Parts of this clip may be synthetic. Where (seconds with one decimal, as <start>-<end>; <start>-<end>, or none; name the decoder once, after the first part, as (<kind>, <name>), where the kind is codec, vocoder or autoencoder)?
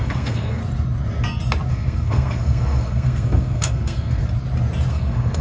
0.0-0.6 (codec, SNAC); 1.7-4.2; 4.9-5.4